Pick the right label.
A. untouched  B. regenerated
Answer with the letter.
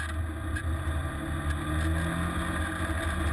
A